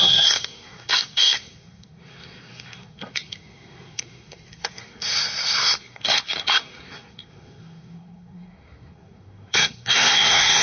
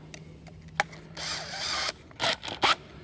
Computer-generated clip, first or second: first